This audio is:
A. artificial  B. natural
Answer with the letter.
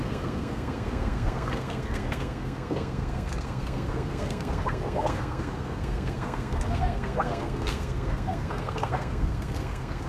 A